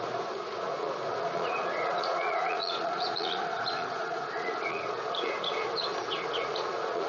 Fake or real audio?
fake